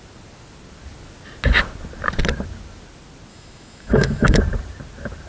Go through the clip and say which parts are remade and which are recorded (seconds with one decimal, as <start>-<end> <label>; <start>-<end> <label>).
0.0-3.3 recorded; 3.3-4.4 remade; 4.4-5.3 recorded